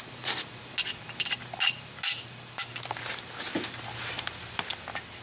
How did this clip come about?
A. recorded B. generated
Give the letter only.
A